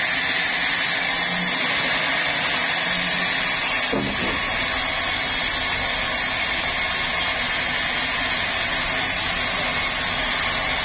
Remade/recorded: recorded